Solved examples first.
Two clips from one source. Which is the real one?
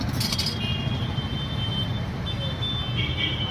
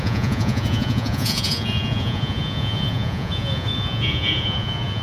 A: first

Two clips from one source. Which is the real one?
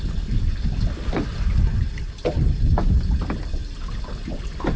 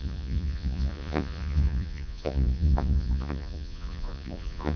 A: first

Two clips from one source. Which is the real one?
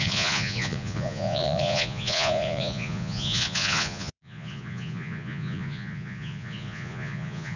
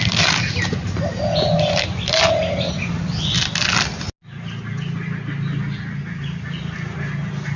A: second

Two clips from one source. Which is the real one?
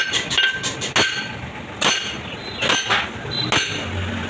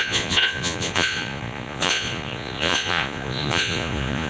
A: first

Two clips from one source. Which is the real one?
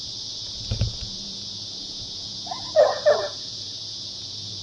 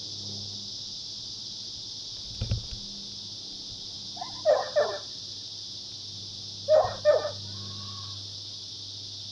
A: second